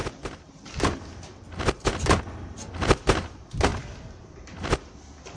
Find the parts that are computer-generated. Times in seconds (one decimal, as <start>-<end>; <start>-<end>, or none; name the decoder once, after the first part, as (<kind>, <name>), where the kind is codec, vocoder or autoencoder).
3.7-5.0 (vocoder, BigVGAN v2)